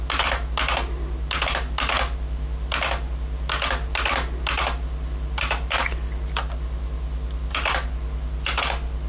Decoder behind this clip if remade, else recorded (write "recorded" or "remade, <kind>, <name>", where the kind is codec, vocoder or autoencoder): recorded